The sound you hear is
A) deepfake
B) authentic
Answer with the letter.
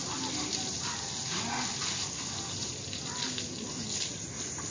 B